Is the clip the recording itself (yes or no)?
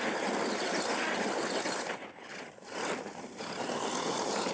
yes